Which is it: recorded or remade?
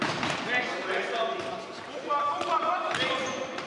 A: recorded